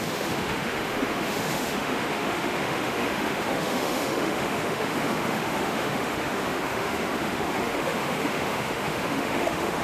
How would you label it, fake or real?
fake